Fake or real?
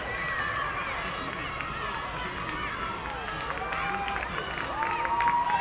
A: real